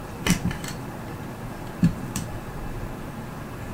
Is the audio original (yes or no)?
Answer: no